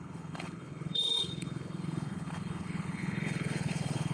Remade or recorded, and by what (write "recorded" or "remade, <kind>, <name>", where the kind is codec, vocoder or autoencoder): remade, codec, HILCodec